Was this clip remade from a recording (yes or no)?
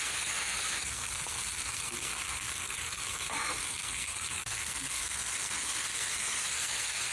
yes